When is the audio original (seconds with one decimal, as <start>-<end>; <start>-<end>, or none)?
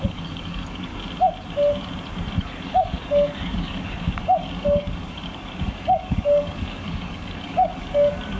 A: 0.9-2.4